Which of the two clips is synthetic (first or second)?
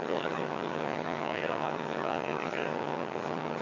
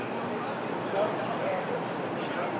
first